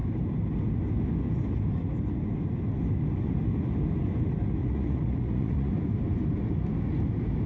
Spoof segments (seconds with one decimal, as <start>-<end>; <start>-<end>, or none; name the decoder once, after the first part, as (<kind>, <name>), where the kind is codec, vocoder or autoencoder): 4.6-5.7 (vocoder, Vocos)